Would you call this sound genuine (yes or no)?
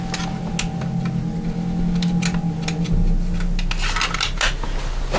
yes